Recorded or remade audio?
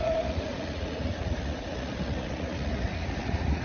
remade